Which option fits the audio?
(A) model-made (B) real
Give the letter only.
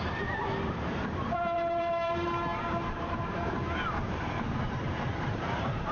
A